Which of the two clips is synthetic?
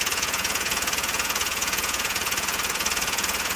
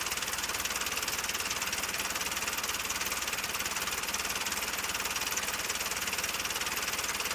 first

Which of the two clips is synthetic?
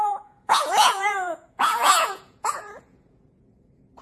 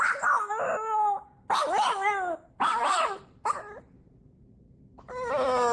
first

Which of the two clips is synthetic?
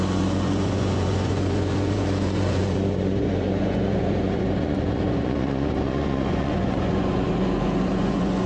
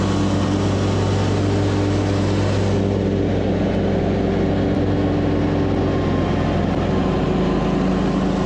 first